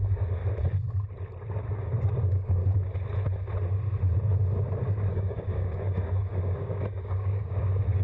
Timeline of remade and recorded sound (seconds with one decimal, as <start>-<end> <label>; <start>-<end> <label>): 0.0-0.4 remade; 0.4-1.6 recorded; 1.6-2.6 remade; 2.6-4.8 recorded; 4.8-8.0 remade